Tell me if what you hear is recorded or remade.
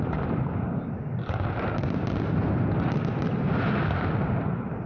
recorded